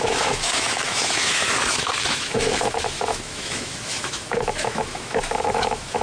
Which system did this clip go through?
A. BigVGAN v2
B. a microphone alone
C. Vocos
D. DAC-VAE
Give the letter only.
D